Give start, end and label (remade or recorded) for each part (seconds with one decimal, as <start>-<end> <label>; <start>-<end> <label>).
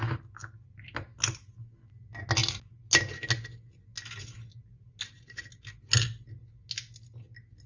0.0-7.7 recorded